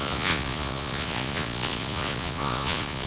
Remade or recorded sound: remade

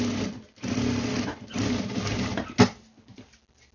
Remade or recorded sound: recorded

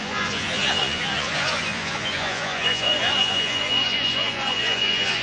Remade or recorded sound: remade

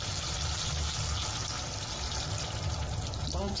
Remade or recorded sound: recorded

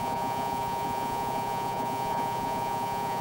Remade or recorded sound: remade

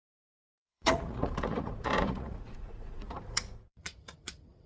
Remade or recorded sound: remade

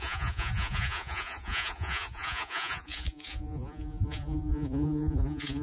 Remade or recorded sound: remade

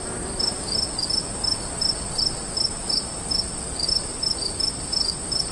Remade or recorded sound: recorded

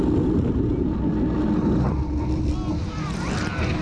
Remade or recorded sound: recorded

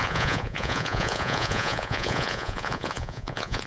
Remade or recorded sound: remade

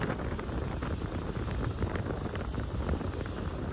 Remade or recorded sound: recorded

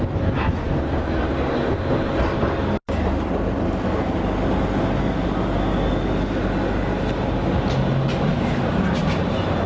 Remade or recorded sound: recorded